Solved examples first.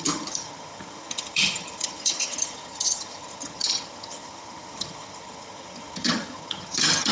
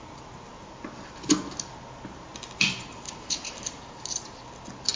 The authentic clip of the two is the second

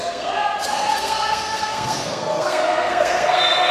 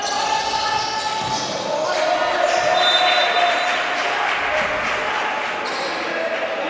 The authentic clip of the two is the second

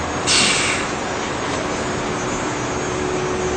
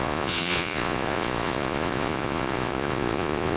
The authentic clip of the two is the first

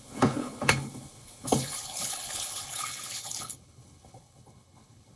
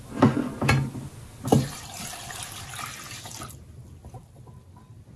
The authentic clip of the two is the second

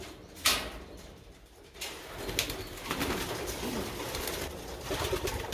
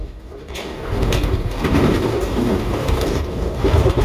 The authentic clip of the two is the first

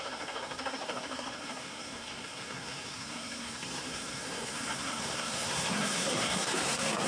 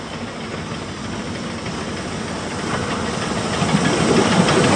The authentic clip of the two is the second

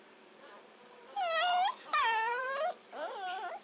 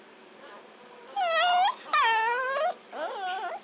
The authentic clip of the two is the second